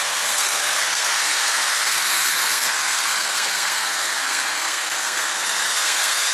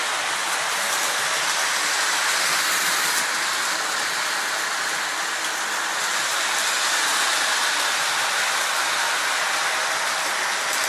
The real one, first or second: second